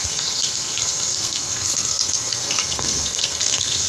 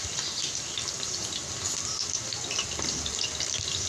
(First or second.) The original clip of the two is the second